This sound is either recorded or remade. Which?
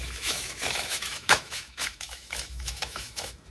remade